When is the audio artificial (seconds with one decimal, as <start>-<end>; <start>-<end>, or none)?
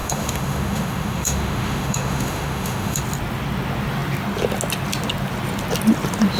0.0-3.0